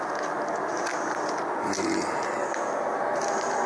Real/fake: real